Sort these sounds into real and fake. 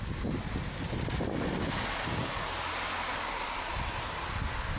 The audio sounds real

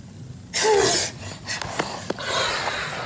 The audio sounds real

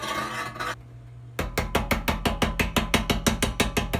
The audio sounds real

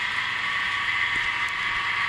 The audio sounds real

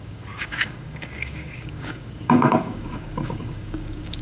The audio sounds fake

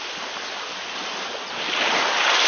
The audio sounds real